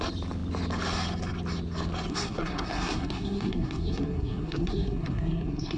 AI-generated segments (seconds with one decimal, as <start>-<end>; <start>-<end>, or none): 2.1-5.8